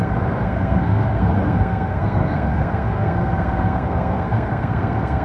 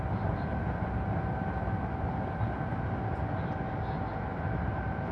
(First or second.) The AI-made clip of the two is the first